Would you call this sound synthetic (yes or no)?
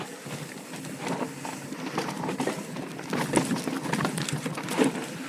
no